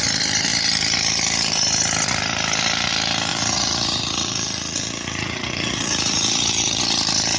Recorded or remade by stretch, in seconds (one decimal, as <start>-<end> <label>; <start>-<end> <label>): 0.0-3.3 recorded; 3.3-6.8 remade; 6.8-7.4 recorded